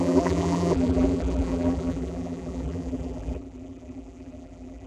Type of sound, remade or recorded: remade